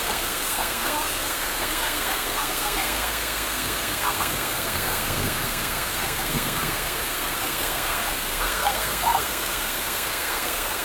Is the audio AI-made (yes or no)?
yes